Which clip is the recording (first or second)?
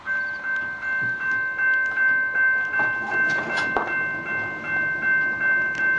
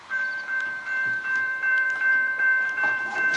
first